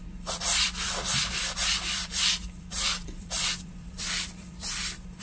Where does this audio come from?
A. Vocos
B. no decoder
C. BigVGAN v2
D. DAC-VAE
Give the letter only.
C